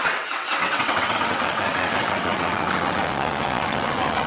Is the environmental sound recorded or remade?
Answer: remade